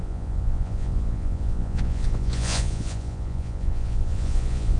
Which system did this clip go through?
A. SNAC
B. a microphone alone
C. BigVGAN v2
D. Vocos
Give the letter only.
D